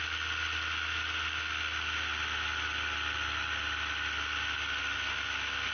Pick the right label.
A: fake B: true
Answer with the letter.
B